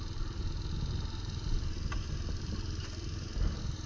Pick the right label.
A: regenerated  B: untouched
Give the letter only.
B